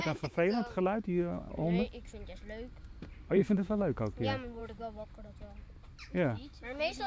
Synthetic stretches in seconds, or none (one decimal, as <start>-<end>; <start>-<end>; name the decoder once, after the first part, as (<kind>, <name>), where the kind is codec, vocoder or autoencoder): 0.0-1.5 (autoencoder, DAC-VAE); 3.4-4.0; 6.0-7.1